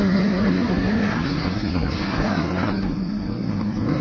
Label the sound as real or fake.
fake